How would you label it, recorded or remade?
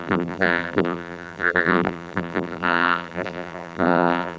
remade